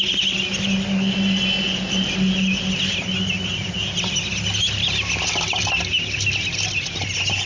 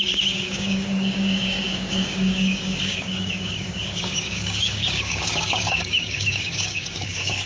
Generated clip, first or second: second